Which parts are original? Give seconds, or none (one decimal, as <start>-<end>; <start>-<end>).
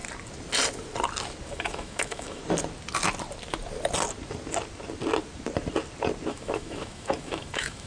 0.0-1.5; 2.4-6.3